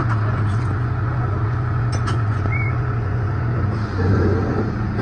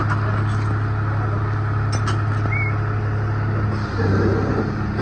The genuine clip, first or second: second